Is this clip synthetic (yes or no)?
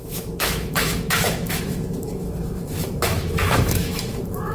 yes